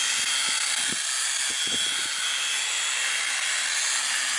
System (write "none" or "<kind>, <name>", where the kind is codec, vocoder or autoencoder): none